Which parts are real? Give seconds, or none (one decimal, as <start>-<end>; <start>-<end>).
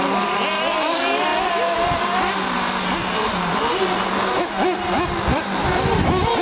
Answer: 0.0-1.3; 4.4-5.3; 6.0-6.4